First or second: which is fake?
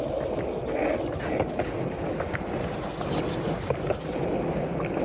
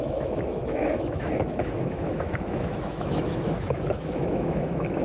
second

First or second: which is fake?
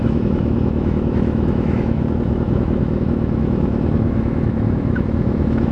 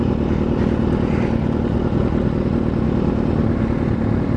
first